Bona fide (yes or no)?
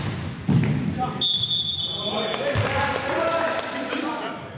yes